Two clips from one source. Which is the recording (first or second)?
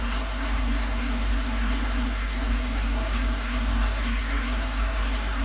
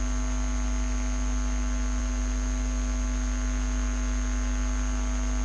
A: second